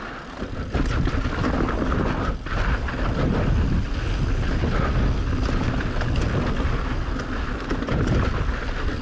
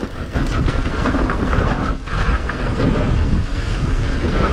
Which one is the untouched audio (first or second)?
first